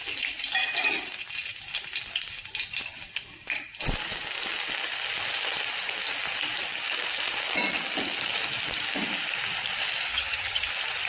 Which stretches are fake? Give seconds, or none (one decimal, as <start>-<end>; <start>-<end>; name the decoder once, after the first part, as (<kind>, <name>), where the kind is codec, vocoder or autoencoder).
10.1-10.7 (vocoder, HiFi-GAN)